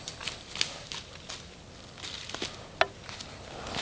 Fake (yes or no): no